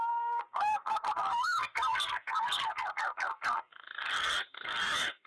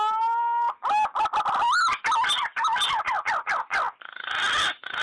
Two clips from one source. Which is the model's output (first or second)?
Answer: first